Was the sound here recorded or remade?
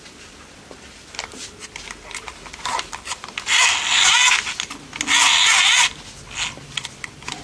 recorded